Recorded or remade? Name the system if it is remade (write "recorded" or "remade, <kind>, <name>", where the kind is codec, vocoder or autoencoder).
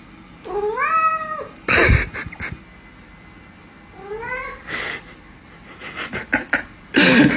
recorded